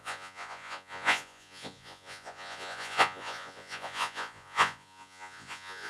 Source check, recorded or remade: remade